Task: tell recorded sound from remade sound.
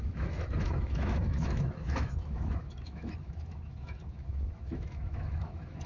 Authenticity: remade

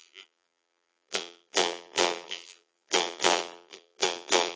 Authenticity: remade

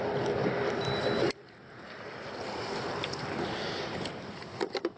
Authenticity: remade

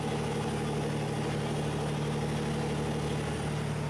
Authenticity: recorded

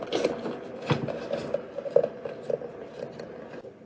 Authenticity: recorded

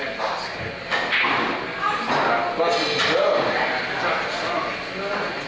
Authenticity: recorded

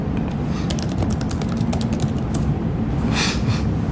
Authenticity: recorded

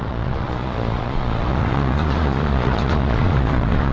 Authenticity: remade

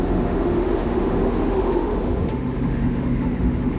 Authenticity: remade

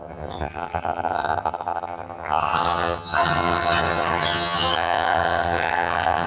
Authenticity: remade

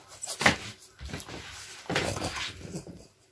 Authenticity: recorded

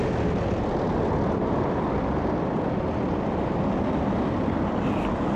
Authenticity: remade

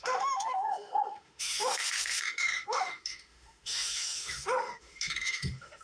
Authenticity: remade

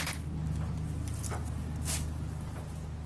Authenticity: recorded